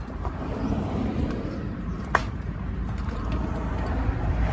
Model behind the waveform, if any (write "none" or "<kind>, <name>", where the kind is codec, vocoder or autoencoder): vocoder, BigVGAN v2